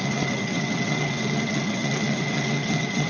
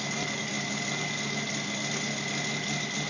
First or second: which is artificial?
first